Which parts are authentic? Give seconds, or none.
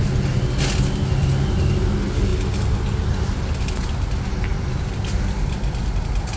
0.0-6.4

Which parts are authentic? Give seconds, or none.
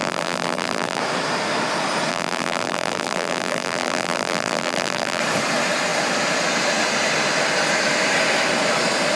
1.0-2.1; 5.2-9.2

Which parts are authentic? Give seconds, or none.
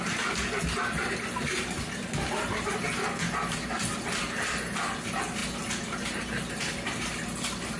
0.0-5.4; 6.0-7.8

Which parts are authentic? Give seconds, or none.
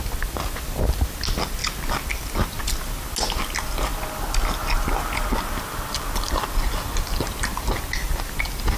0.0-8.8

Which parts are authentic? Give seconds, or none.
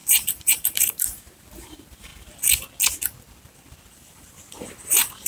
2.1-3.9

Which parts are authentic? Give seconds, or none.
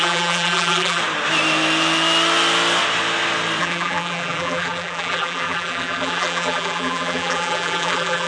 1.0-3.6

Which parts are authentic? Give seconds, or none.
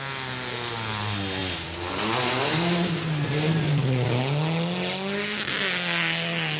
0.0-6.6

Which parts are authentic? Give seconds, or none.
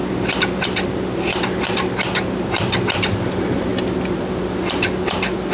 0.0-5.5